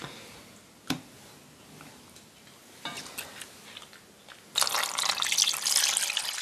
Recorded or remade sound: recorded